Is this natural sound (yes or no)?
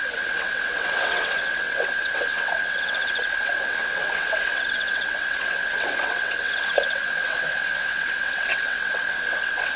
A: no